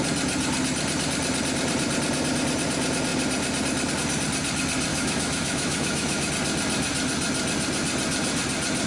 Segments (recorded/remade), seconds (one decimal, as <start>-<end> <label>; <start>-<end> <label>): 0.0-4.9 recorded; 4.9-6.3 remade; 6.3-8.9 recorded